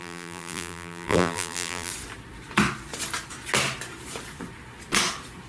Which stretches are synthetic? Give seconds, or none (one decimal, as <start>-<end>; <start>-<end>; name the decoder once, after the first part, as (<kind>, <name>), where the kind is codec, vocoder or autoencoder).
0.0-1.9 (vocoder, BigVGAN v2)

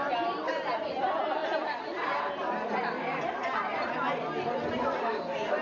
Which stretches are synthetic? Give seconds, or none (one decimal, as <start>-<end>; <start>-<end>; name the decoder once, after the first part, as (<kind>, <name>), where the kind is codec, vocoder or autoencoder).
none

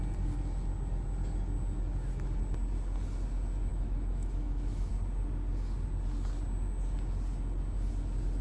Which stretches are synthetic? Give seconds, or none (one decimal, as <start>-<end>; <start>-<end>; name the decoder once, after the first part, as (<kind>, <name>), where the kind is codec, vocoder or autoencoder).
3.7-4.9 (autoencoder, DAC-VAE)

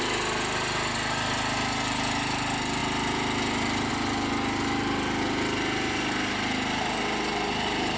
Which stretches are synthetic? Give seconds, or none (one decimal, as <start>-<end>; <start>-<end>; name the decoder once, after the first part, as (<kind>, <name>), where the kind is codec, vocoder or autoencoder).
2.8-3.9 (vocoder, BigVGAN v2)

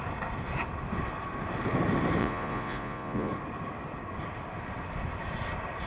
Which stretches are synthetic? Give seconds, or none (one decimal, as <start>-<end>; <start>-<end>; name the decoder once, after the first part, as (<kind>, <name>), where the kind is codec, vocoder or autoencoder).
2.2-3.3 (vocoder, Vocos)

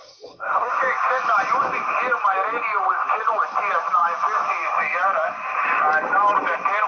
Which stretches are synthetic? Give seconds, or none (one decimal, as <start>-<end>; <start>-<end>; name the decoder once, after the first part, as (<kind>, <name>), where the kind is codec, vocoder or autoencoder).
0.0-0.8 (codec, SNAC)

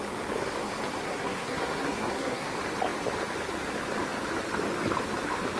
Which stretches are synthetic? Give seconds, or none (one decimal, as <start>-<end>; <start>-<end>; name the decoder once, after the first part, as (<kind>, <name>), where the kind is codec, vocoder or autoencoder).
1.0-2.5 (codec, SNAC)

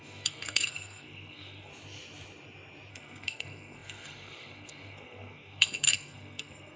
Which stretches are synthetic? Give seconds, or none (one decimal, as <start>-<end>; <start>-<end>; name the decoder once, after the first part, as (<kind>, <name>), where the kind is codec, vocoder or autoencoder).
0.0-1.7 (codec, SNAC); 2.9-6.8